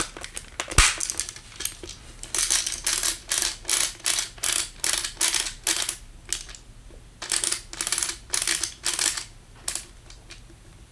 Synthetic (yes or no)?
no